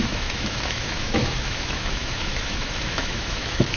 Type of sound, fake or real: fake